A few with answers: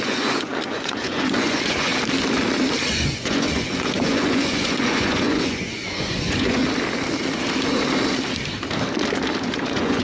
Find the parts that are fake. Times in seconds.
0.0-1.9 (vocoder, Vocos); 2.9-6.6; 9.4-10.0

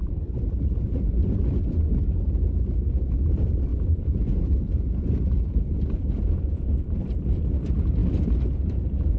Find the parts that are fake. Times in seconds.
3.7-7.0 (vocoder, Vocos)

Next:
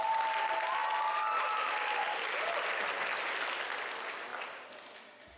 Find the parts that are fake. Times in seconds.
none